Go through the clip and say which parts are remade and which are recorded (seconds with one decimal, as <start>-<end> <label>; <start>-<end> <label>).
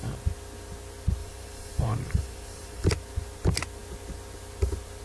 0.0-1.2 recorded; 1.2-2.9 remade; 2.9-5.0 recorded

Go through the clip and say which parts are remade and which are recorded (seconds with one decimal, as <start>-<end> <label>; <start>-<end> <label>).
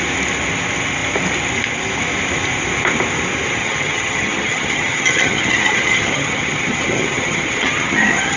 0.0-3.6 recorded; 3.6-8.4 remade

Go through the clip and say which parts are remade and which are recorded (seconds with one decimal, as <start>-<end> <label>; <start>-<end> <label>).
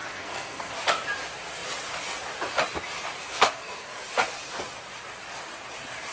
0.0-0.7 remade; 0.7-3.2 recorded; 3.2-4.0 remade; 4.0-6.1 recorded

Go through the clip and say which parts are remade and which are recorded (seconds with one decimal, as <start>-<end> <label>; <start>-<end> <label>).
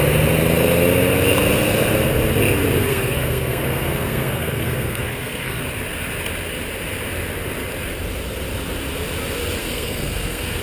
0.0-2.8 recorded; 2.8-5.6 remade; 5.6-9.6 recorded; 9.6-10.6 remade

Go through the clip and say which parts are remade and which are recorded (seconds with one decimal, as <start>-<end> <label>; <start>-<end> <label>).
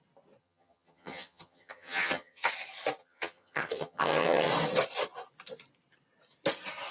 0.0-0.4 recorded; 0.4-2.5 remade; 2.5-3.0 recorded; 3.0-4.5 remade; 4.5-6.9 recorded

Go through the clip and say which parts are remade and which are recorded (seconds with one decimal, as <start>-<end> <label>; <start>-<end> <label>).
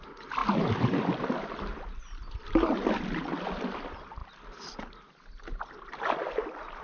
0.0-6.8 recorded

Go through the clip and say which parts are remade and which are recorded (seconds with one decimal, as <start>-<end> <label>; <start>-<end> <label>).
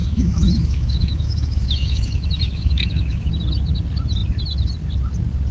0.0-3.3 remade; 3.3-5.5 recorded